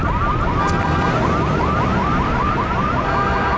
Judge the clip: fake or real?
real